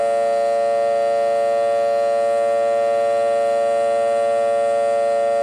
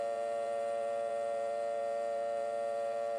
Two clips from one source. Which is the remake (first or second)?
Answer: second